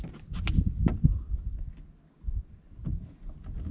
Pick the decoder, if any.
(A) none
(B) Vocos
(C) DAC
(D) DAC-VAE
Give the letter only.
A